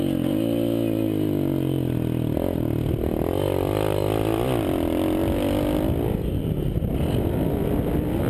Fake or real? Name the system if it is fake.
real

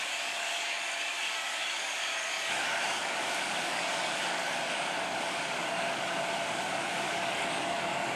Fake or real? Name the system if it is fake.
fake, codec, DAC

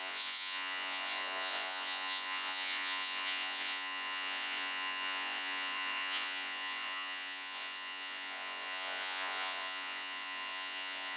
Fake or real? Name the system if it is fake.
fake, vocoder, Vocos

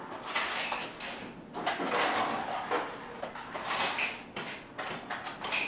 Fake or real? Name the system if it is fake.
real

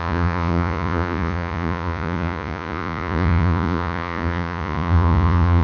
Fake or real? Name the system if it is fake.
fake, vocoder, Vocos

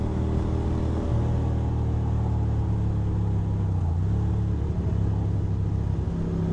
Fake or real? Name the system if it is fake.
real